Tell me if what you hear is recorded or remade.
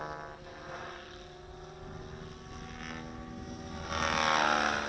recorded